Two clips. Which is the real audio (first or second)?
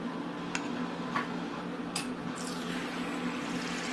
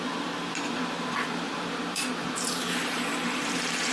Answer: first